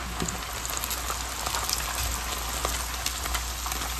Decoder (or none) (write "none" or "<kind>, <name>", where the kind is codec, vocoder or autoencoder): none